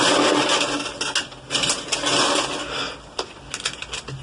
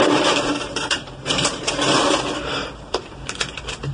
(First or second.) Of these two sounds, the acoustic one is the first